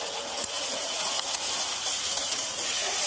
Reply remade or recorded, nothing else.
remade